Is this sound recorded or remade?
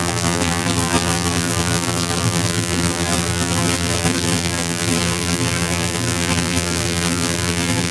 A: remade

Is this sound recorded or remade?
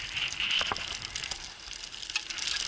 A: recorded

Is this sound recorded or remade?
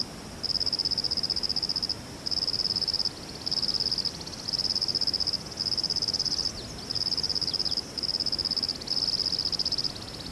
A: recorded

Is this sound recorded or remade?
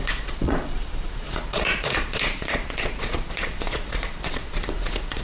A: remade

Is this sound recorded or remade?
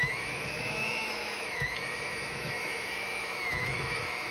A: remade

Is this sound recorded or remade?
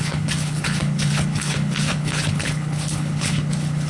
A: remade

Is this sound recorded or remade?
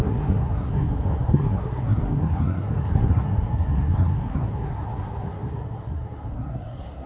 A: remade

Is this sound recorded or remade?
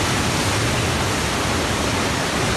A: recorded